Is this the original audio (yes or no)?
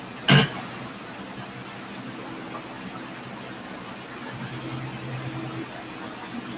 yes